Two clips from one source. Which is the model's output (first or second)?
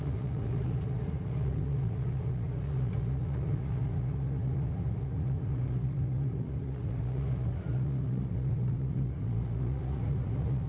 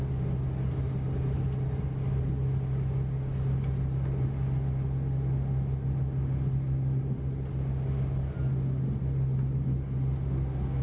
first